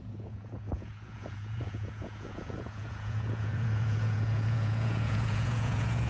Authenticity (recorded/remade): remade